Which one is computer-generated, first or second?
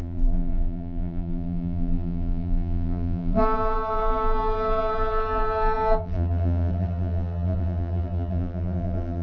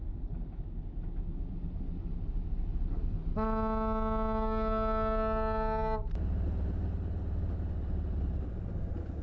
first